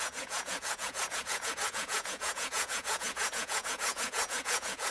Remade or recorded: remade